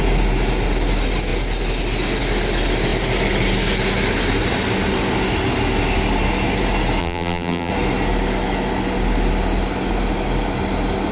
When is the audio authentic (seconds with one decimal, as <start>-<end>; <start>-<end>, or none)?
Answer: 0.0-7.0; 7.7-11.1